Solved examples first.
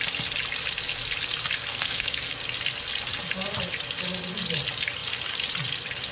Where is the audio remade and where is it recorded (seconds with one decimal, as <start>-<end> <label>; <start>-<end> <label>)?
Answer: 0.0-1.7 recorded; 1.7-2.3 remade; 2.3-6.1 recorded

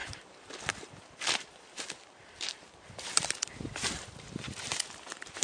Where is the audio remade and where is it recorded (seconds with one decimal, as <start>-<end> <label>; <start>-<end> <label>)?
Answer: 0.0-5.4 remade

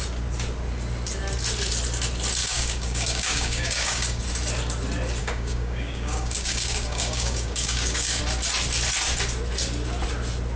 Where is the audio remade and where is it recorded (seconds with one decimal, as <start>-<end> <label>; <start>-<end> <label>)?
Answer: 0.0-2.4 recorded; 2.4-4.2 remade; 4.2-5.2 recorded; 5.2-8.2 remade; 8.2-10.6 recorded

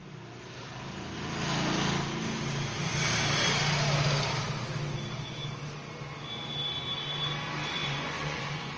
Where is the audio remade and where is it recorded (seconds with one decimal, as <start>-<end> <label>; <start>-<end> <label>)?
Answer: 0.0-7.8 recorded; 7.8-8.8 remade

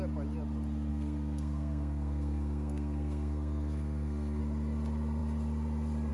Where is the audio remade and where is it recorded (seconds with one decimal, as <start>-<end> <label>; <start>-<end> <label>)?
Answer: 0.0-0.9 recorded; 0.9-4.4 remade; 4.4-6.1 recorded